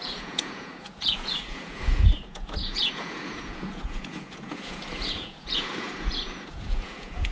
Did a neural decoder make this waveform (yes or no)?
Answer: yes